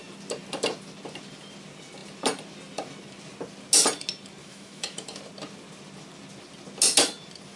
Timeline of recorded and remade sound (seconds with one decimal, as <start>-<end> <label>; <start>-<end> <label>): 0.0-4.4 recorded; 4.4-5.2 remade; 5.2-7.6 recorded